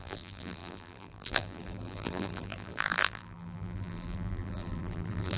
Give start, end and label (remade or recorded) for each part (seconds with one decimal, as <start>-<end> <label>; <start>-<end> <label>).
0.0-5.4 remade